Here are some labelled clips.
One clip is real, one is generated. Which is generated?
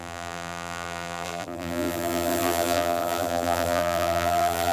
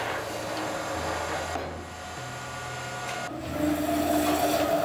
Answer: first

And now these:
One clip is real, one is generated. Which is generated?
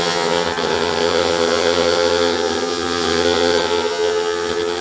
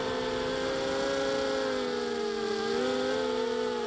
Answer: first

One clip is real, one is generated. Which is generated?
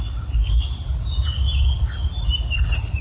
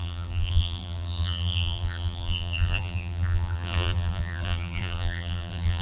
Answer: second